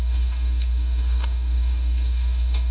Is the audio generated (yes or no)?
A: yes